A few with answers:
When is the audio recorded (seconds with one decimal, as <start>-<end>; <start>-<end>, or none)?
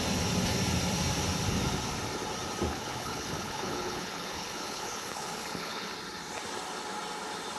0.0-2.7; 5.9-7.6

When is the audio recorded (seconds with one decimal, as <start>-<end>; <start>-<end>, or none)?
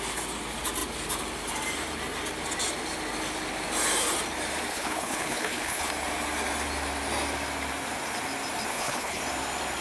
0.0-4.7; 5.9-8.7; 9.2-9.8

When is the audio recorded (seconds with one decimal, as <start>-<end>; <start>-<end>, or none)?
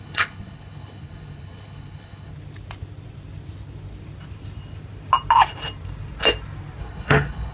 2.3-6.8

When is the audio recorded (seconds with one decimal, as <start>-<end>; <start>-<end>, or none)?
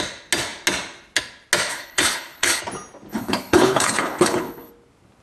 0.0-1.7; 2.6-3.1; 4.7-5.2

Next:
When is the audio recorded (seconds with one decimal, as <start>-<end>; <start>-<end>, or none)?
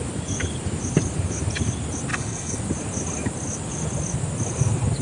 0.0-2.1; 2.6-5.0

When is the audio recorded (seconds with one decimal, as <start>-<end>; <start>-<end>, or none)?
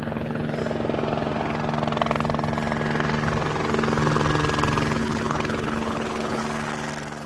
0.6-5.0; 6.4-7.3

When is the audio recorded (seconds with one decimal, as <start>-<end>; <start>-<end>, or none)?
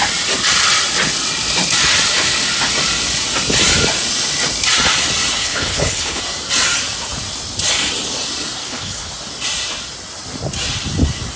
0.0-5.4; 6.2-8.6; 9.1-11.4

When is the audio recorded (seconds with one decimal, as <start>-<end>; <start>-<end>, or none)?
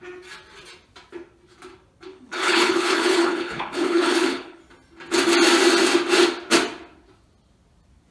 0.0-2.1; 4.6-8.1